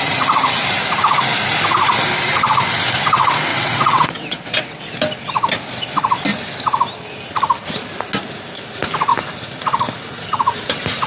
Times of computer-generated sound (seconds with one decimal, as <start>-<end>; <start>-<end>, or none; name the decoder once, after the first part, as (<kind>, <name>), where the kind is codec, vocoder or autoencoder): 3.5-4.8 (vocoder, WaveNeXt)